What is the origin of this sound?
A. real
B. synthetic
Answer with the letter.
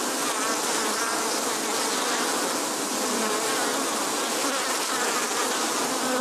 A